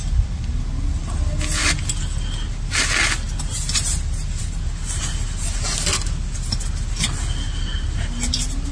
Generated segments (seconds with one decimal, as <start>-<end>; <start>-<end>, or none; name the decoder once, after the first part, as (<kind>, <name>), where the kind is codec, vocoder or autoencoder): none